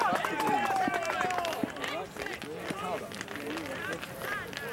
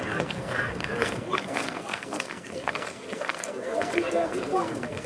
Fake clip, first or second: second